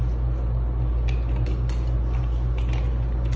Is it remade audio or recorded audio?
recorded